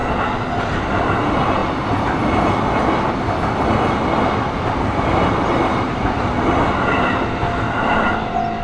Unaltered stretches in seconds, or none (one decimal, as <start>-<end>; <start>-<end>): 0.0-8.6